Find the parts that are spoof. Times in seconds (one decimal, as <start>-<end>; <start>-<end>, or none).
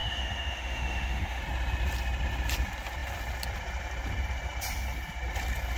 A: 0.0-1.4